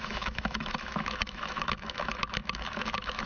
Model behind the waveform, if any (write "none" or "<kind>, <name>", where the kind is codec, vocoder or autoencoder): autoencoder, DAC-VAE